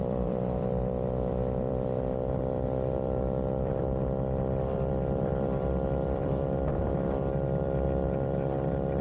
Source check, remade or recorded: remade